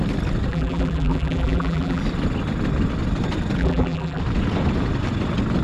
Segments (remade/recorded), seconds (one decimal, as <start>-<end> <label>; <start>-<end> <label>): 0.0-0.5 recorded; 0.5-2.0 remade; 2.0-3.6 recorded; 3.6-4.2 remade; 4.2-5.6 recorded